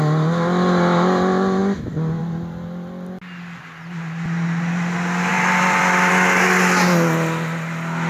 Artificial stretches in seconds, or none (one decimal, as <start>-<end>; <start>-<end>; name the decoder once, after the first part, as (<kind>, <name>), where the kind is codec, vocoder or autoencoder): 5.3-6.1 (vocoder, BigVGAN v2)